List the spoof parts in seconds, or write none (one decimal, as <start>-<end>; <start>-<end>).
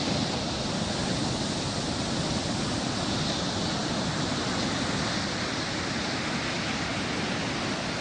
none